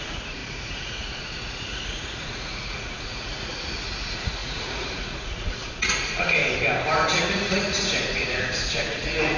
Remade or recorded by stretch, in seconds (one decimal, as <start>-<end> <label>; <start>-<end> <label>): 0.0-6.4 remade; 6.4-7.1 recorded; 7.1-9.4 remade